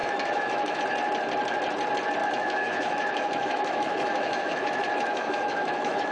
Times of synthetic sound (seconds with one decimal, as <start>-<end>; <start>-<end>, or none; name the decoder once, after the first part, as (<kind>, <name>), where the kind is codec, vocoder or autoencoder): 0.0-0.8 (autoencoder, DAC-VAE); 2.2-6.1